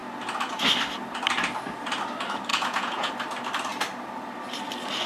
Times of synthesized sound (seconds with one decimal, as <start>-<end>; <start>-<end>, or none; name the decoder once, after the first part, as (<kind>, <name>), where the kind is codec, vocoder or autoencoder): 2.5-3.1 (vocoder, Vocos)